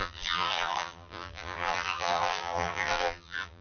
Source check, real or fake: fake